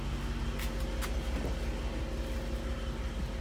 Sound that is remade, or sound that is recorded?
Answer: recorded